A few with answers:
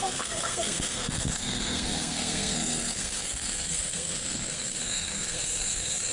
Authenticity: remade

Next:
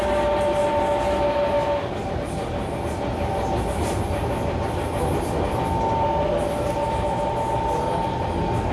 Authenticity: recorded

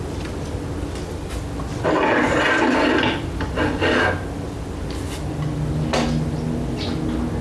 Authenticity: recorded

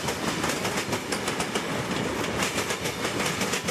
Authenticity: recorded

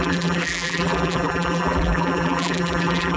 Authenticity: remade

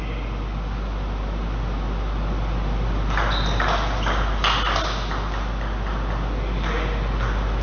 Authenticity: recorded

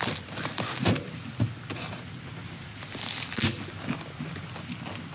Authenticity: recorded